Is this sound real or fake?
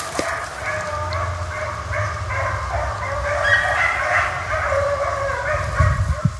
real